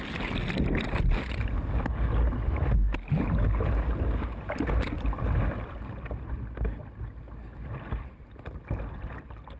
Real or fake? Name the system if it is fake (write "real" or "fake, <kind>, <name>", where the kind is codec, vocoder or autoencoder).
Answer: real